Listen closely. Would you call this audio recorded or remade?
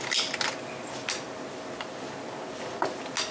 recorded